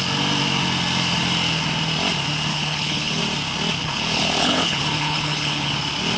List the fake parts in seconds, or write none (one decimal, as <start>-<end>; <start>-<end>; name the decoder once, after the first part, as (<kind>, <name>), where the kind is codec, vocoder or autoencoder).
2.5-3.2 (codec, HILCodec); 3.8-5.7